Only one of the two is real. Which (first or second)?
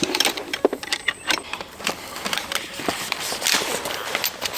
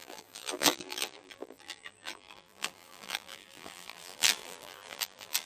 first